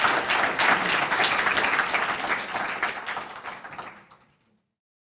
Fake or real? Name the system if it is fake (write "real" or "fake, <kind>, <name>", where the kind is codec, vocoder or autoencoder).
real